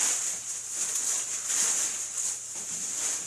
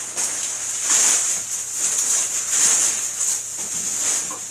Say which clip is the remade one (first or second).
first